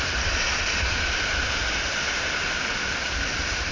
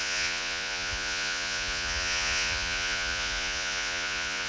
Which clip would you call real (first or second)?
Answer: first